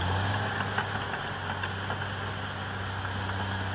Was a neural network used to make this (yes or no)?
no